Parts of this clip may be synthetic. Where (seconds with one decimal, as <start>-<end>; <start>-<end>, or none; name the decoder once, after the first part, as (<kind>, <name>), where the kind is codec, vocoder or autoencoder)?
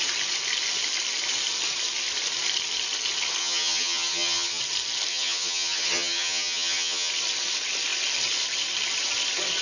3.4-4.6 (vocoder, HiFi-GAN); 5.1-7.1